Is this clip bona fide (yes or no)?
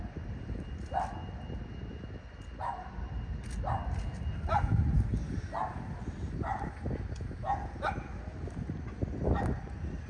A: yes